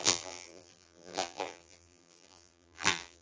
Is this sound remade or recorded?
remade